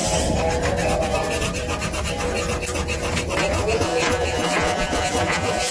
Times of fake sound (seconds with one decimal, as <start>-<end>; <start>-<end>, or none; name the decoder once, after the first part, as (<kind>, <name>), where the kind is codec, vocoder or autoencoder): 3.4-5.7 (vocoder, Vocos)